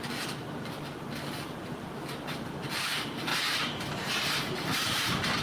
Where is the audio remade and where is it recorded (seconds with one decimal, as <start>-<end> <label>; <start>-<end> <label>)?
0.0-5.4 remade